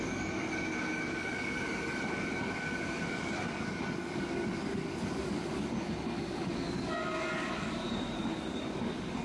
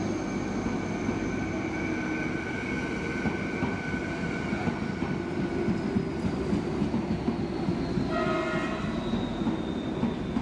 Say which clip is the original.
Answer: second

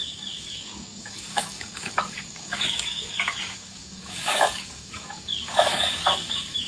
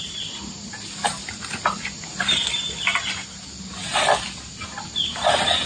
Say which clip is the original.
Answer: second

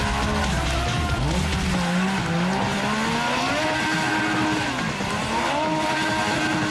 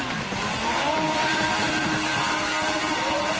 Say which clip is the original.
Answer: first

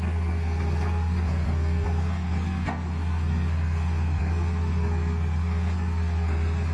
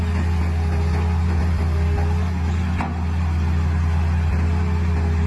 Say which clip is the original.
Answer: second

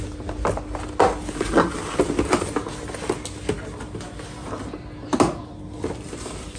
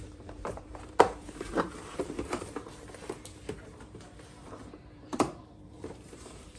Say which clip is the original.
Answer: first